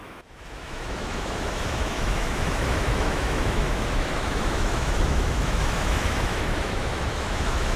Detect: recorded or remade remade